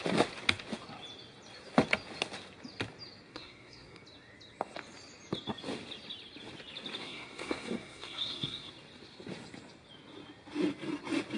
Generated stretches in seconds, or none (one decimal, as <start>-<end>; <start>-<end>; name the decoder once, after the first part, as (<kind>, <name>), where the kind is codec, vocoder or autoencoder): 3.3-4.0 (codec, SNAC); 7.0-8.7